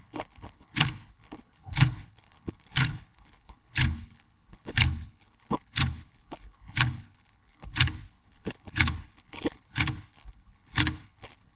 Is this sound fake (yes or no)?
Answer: yes